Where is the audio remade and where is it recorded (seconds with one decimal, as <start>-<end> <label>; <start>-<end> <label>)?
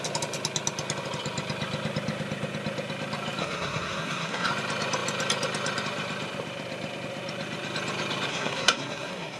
0.0-3.4 recorded; 3.4-4.5 remade; 4.5-8.3 recorded; 8.3-9.4 remade